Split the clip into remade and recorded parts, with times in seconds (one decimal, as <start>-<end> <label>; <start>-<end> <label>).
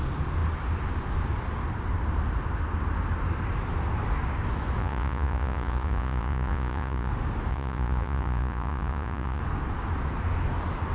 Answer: 0.0-4.8 recorded; 4.8-7.1 remade; 7.1-7.5 recorded; 7.5-9.4 remade; 9.4-10.9 recorded